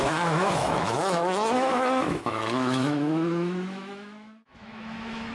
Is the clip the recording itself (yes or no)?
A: no